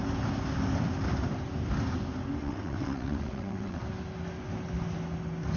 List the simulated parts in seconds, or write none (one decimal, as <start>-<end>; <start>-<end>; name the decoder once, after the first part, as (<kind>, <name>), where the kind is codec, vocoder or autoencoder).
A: 2.4-3.8 (vocoder, WaveNeXt)